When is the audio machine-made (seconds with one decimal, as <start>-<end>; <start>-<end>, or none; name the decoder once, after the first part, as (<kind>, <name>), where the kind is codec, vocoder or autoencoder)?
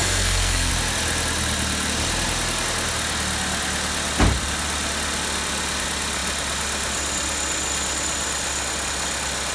0.0-0.7 (codec, SNAC)